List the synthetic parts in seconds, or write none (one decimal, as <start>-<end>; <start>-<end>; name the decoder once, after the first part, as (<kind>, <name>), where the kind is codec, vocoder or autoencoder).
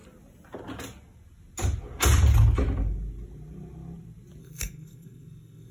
4.4-5.7 (codec, SNAC)